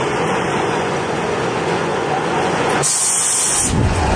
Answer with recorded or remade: remade